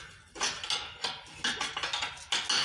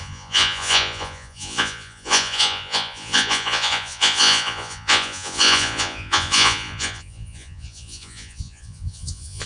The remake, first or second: second